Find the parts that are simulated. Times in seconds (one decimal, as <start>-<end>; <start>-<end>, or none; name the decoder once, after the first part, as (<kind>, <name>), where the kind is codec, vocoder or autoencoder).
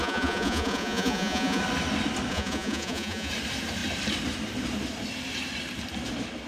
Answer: 0.0-1.6 (vocoder, Vocos); 2.3-3.3